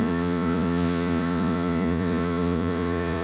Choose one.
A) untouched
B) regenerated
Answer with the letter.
B